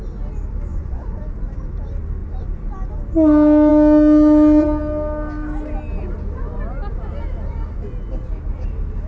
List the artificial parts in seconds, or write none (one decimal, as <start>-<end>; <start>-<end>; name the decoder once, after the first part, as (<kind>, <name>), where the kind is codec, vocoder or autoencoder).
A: 0.7-1.2 (vocoder, Vocos)